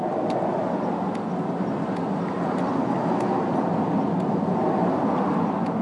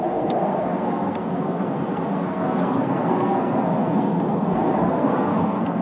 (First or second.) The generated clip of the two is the second